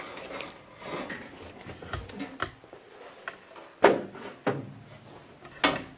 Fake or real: real